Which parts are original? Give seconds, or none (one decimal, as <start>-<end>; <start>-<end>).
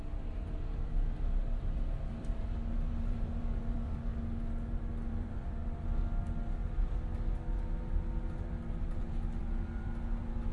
4.1-5.1; 5.6-9.4